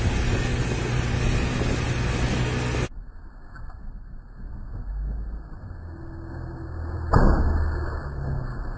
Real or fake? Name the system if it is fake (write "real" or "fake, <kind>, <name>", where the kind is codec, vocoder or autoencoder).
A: real